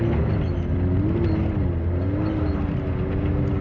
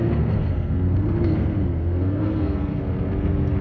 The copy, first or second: second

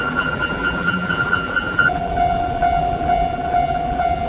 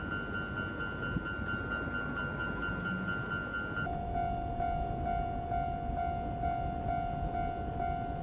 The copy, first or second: first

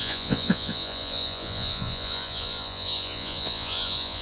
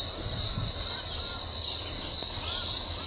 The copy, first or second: first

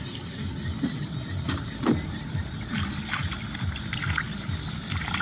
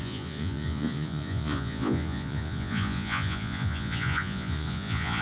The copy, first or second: second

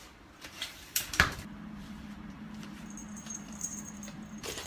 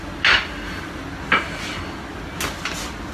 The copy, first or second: first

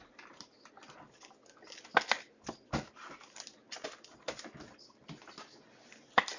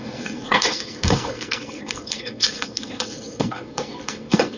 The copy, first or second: second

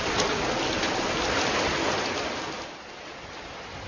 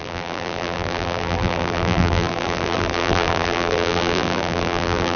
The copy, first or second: second